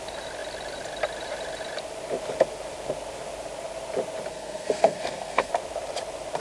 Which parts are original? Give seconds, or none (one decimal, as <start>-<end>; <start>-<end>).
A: 0.0-4.3; 5.5-6.4